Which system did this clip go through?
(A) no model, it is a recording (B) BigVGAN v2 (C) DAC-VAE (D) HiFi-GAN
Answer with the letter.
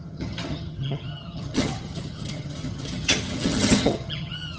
D